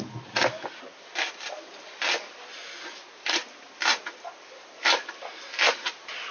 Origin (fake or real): real